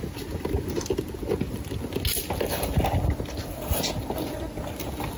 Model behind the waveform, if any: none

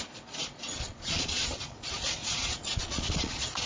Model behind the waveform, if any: vocoder, Vocos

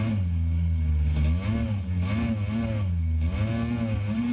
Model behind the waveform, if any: none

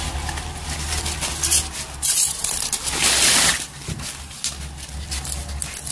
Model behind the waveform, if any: none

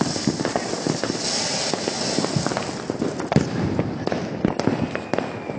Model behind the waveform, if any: none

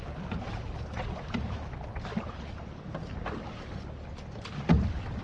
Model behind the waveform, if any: none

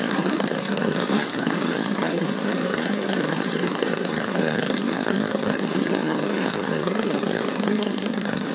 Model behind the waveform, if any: codec, SNAC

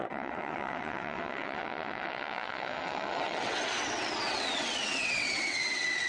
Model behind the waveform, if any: vocoder, WaveNeXt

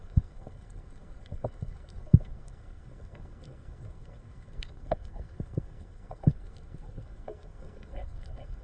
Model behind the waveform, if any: codec, SNAC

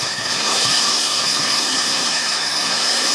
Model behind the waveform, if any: codec, SNAC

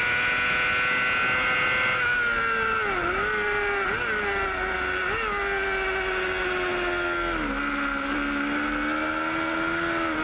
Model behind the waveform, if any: none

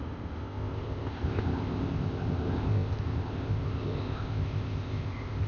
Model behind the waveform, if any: codec, ZipCodec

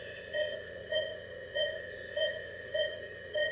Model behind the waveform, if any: vocoder, Vocos